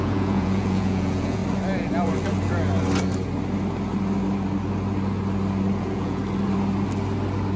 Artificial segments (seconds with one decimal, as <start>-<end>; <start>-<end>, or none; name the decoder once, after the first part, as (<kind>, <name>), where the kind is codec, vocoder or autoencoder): 0.0-1.4 (vocoder, Vocos); 5.8-6.2